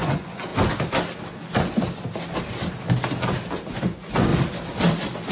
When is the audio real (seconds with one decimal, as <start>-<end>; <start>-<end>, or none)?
0.5-3.7; 4.3-5.3